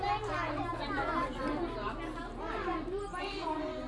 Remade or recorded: recorded